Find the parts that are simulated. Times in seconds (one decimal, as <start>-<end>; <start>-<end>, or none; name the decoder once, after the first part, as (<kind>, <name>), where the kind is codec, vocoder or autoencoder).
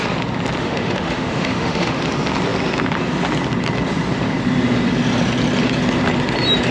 0.6-2.0 (autoencoder, DAC-VAE)